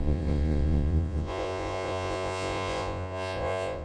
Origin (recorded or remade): remade